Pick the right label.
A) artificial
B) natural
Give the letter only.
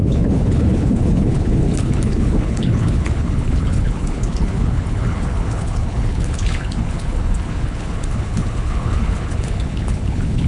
A